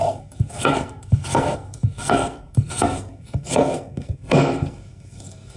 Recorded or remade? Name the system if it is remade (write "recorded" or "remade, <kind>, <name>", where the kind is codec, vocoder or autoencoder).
remade, codec, SNAC